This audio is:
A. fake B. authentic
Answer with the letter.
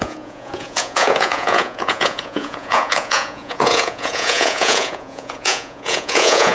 A